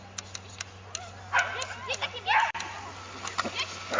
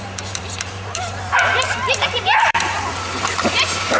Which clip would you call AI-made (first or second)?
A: second